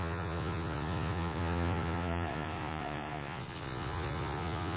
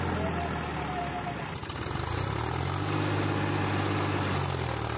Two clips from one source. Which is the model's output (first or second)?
first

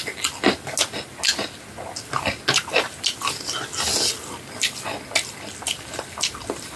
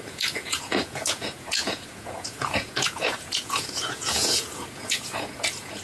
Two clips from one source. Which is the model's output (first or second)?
second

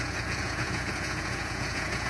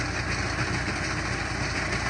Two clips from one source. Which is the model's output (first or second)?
first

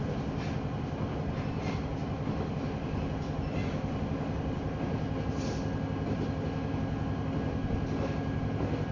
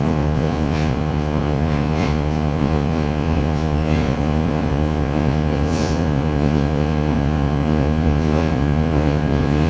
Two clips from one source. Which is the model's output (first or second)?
second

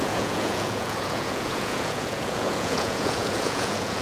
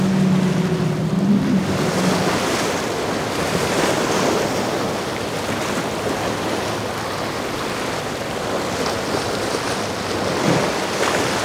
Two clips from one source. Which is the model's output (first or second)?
first